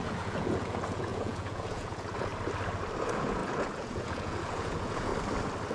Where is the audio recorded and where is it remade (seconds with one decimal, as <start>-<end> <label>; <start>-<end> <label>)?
0.0-2.3 remade; 2.3-3.0 recorded; 3.0-5.1 remade; 5.1-5.7 recorded